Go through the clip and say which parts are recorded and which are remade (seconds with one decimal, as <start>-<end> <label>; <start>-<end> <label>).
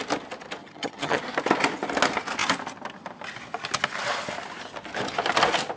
0.0-0.6 recorded; 0.6-1.2 remade; 1.2-5.8 recorded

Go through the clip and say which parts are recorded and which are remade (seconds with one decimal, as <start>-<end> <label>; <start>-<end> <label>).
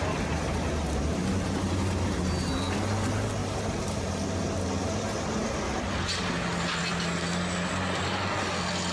0.0-8.9 recorded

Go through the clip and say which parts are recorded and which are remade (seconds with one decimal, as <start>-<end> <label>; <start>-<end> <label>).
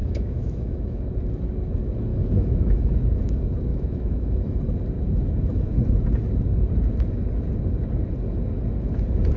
0.0-1.0 remade; 1.0-2.1 recorded; 2.1-3.2 remade; 3.2-3.7 recorded; 3.7-4.6 remade; 4.6-9.4 recorded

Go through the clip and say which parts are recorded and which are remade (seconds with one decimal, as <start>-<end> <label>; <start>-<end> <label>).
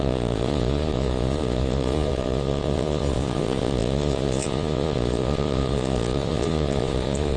0.0-7.4 remade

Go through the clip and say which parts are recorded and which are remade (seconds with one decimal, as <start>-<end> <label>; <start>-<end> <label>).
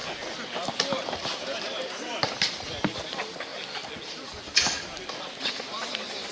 0.0-0.7 recorded; 0.7-3.5 remade; 3.5-5.5 recorded; 5.5-6.3 remade